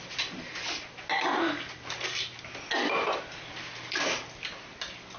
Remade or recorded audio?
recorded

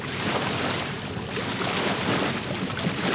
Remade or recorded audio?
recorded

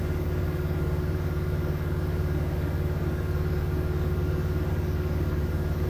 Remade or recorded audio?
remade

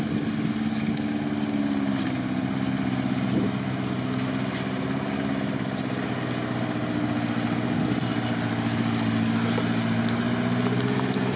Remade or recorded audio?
recorded